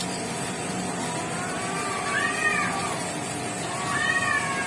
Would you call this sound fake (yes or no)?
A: no